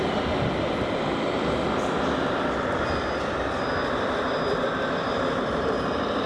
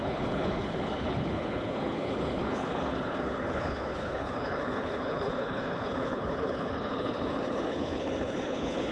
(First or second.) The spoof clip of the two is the second